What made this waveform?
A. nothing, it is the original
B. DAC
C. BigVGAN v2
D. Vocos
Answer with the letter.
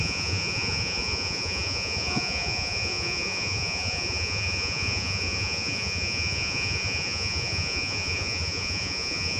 D